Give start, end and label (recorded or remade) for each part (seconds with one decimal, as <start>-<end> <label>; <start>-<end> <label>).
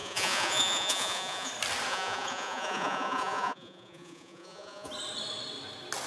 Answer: 0.0-1.5 remade; 1.5-1.9 recorded; 1.9-4.9 remade; 4.9-6.1 recorded